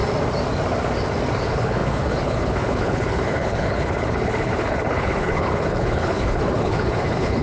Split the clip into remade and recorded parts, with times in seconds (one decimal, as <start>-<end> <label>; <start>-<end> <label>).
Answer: 0.0-1.4 recorded; 1.4-7.4 remade